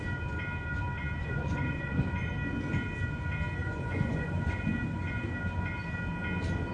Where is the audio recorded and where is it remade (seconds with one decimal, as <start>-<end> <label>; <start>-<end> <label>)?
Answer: 0.0-1.2 recorded; 1.2-2.3 remade; 2.3-3.6 recorded; 3.6-4.6 remade; 4.6-6.7 recorded